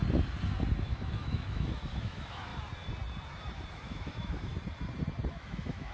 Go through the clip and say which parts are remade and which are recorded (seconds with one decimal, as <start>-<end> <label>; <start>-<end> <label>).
0.0-0.8 recorded; 0.8-2.5 remade; 2.5-3.7 recorded; 3.7-4.5 remade; 4.5-5.3 recorded; 5.3-5.9 remade